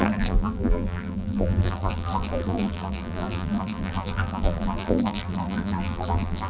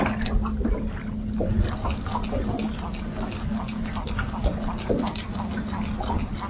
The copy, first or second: first